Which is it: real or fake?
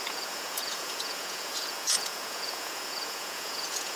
fake